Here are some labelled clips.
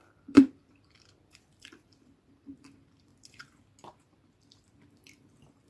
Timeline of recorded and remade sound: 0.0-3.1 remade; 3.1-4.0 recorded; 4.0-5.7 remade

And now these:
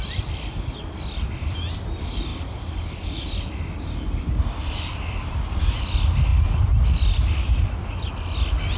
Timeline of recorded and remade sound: 0.0-8.8 recorded